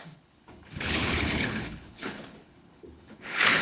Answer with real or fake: fake